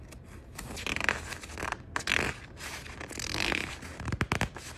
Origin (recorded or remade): recorded